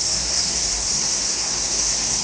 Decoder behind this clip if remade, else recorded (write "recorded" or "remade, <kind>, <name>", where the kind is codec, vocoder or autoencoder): remade, codec, SNAC